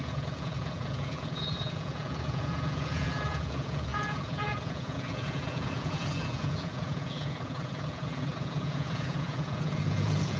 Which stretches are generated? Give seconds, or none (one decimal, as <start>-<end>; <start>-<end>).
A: 0.0-10.4